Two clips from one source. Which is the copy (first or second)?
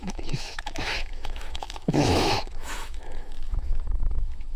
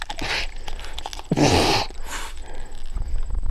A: first